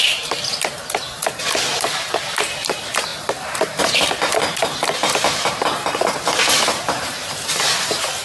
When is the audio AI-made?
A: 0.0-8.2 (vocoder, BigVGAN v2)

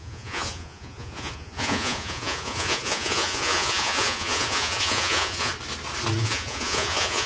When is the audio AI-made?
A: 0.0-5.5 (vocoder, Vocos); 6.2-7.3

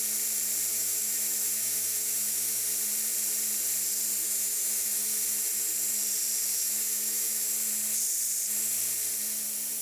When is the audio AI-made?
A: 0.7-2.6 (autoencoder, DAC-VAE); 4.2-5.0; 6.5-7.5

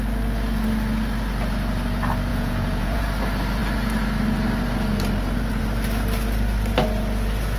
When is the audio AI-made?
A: 2.3-3.0 (vocoder, Vocos)

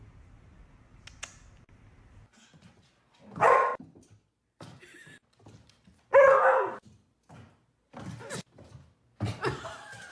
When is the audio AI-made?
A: none